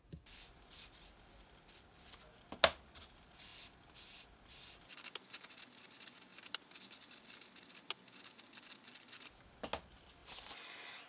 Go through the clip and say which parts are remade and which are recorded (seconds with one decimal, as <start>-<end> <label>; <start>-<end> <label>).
0.0-11.1 recorded